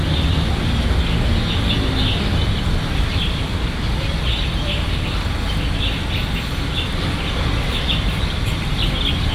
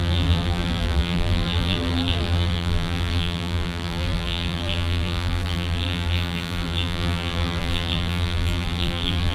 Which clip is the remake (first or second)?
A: second